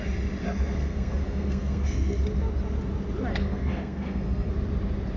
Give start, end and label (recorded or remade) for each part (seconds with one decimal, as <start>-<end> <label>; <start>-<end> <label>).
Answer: 0.0-0.4 recorded; 0.4-2.2 remade; 2.2-3.3 recorded; 3.3-4.5 remade; 4.5-5.2 recorded